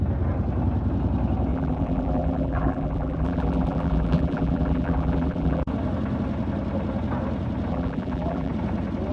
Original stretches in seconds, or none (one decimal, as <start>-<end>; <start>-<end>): 0.0-1.5; 5.7-7.7; 8.5-9.1